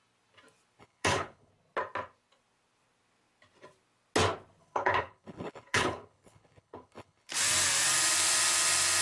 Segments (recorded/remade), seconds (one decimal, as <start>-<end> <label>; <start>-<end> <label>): 0.0-0.8 recorded; 0.8-1.5 remade; 1.5-4.6 recorded; 4.6-7.3 remade; 7.3-9.0 recorded